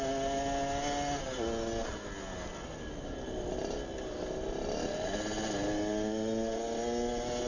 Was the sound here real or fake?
real